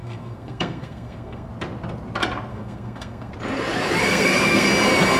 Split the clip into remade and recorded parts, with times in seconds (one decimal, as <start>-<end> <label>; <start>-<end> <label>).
0.0-1.5 remade; 1.5-2.5 recorded; 2.5-3.3 remade; 3.3-4.0 recorded; 4.0-4.7 remade; 4.7-5.2 recorded